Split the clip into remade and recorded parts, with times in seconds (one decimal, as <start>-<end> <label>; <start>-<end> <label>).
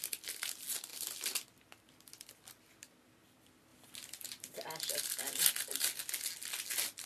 0.0-7.1 recorded